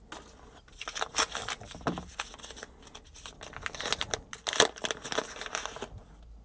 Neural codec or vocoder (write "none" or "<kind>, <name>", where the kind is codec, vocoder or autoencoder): none